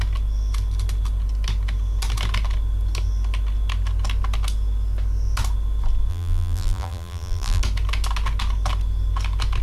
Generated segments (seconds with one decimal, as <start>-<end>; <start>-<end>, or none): 6.1-7.6